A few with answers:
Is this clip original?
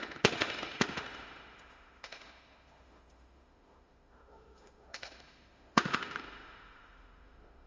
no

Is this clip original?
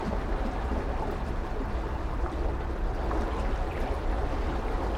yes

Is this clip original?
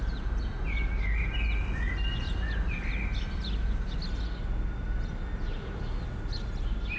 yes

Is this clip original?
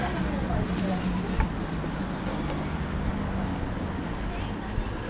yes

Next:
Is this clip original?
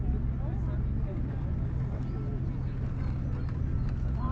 yes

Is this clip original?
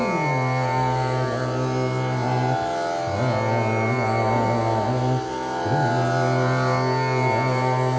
yes